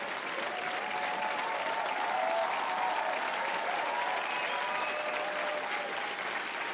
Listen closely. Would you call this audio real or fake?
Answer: real